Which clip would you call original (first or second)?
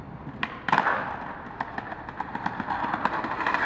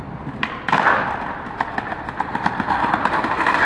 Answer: first